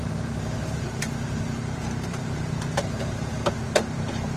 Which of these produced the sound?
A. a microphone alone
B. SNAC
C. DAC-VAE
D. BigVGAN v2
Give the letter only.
D